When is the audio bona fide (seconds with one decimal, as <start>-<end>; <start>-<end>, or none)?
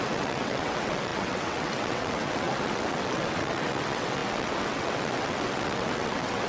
none